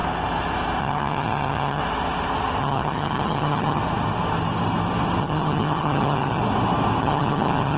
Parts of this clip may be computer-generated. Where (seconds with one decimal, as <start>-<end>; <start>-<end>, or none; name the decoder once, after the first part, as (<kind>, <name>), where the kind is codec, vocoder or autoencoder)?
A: 0.8-1.8 (vocoder, HiFi-GAN); 2.6-3.8; 5.2-6.4; 7.0-7.8